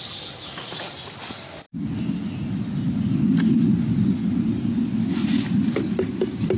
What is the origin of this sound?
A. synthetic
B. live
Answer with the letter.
B